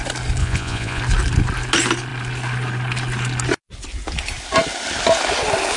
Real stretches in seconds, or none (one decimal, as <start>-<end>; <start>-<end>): 0.0-0.4; 1.0-5.8